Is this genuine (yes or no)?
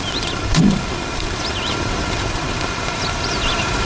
no